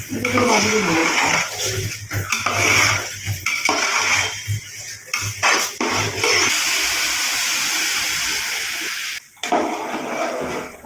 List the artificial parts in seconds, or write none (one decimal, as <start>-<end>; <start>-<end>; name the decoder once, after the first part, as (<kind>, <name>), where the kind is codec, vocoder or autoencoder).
none